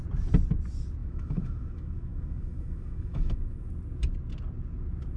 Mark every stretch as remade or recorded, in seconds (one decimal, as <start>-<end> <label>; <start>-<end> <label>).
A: 0.0-1.0 recorded; 1.0-3.7 remade; 3.7-5.2 recorded